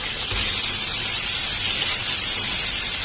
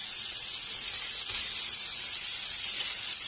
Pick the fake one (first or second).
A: second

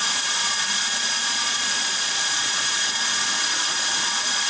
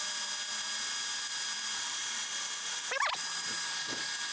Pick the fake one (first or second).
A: first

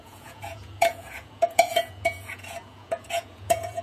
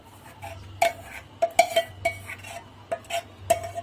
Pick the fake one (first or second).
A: first